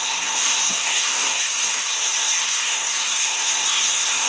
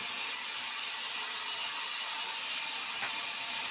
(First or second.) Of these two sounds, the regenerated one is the first